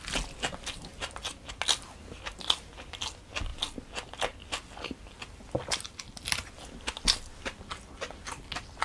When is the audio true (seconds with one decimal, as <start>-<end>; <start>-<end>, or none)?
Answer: 0.0-8.8